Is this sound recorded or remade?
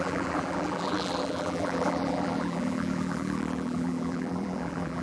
remade